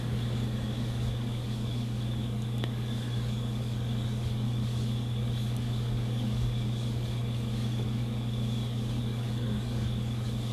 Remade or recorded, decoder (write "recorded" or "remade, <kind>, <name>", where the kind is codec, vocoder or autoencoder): remade, codec, DAC